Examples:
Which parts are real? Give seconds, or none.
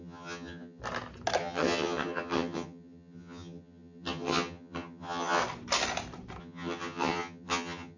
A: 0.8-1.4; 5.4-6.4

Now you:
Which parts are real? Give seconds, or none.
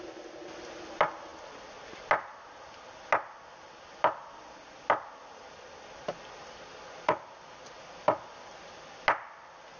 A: 0.0-9.8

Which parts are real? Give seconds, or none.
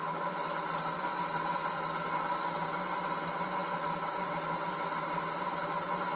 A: 0.0-6.2